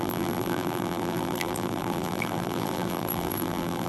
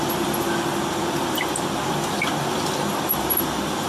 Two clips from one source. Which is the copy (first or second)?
first